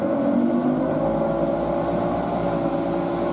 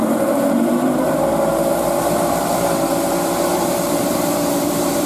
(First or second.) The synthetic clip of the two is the second